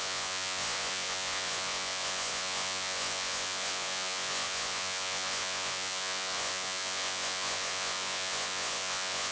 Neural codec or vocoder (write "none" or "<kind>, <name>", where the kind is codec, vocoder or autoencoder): vocoder, Vocos